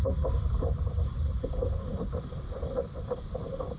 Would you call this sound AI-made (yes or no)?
yes